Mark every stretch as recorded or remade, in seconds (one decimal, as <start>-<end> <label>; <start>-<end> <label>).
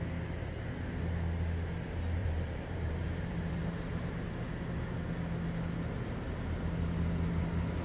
0.0-2.2 recorded; 2.2-4.3 remade; 4.3-7.8 recorded